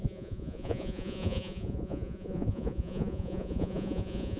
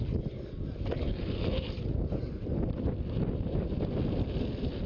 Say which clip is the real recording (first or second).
second